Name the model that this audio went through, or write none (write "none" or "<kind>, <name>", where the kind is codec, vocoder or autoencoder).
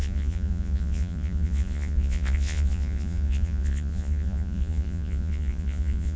vocoder, Vocos